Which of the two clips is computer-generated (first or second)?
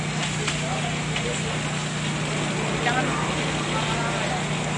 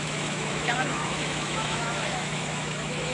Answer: second